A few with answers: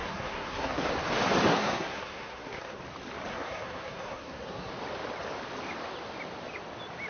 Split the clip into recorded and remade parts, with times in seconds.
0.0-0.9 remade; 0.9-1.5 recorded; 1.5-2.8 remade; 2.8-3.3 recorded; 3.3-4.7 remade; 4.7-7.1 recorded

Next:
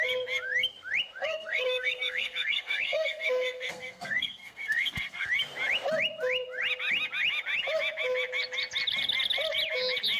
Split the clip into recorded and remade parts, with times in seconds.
0.0-1.2 recorded; 1.2-5.3 remade; 5.3-10.2 recorded

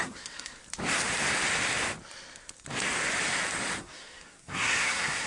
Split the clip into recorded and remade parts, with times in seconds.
0.0-0.6 remade; 0.6-3.8 recorded; 3.8-5.3 remade

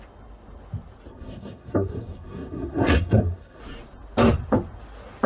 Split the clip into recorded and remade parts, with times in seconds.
0.0-1.1 recorded; 1.1-3.6 remade; 3.6-5.3 recorded

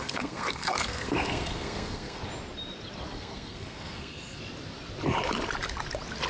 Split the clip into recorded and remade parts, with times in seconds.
0.0-2.2 remade; 2.2-3.1 recorded; 3.1-4.4 remade; 4.4-6.3 recorded